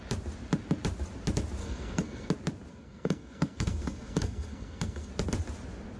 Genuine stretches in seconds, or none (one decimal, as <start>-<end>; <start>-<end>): 0.0-1.6; 2.3-2.7; 5.1-6.0